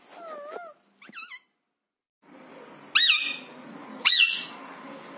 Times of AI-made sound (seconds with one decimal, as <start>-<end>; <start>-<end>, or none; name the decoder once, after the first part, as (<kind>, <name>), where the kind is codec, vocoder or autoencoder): 3.8-4.5 (vocoder, Vocos)